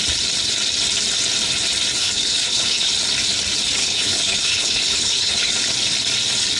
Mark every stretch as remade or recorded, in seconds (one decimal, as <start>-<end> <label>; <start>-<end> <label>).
0.0-2.0 recorded; 2.0-2.9 remade; 2.9-3.8 recorded; 3.8-5.5 remade; 5.5-6.6 recorded